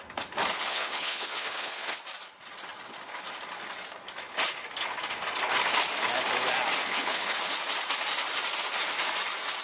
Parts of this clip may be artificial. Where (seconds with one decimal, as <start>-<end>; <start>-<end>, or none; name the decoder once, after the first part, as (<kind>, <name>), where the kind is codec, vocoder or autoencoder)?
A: 0.6-2.0 (codec, HILCodec); 6.8-7.4